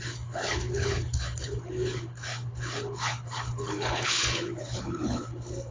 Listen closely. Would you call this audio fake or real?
fake